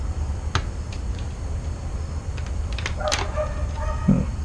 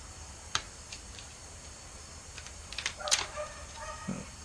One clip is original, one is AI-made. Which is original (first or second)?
first